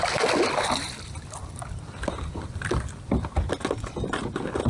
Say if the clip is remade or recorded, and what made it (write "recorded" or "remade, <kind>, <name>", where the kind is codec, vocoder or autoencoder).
recorded